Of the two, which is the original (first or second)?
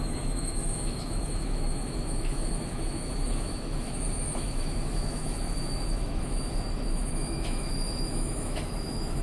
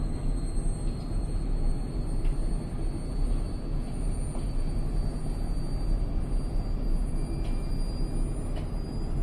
second